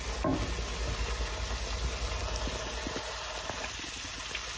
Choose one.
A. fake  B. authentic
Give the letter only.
B